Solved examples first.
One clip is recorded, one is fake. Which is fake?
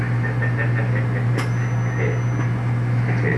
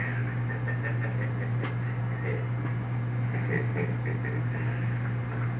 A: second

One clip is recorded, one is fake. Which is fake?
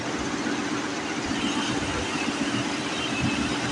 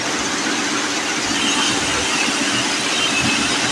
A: first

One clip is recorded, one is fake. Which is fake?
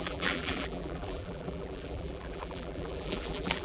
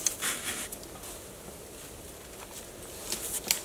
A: first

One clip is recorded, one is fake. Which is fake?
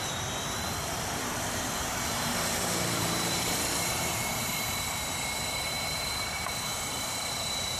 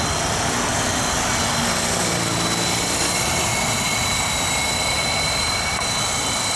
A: first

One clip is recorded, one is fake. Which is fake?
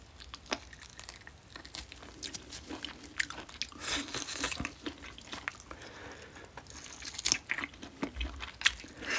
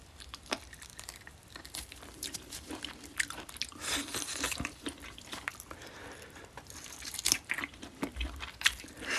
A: second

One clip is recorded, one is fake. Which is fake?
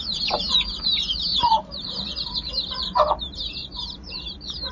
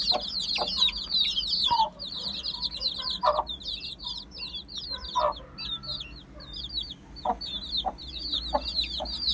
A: first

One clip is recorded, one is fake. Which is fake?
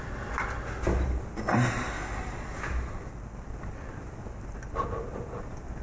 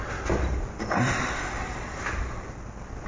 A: second